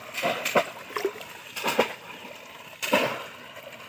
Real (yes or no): yes